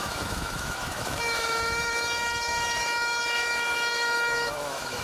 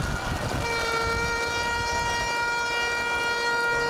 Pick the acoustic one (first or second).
second